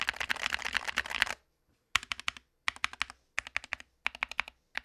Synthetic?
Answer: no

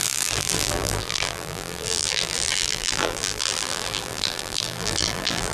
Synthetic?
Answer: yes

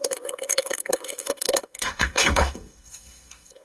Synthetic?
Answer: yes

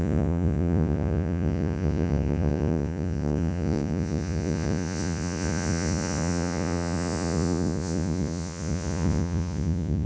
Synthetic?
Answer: yes